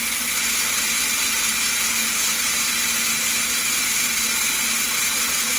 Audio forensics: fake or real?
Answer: real